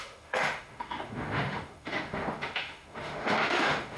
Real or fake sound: fake